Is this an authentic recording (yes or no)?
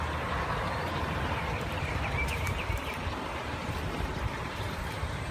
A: no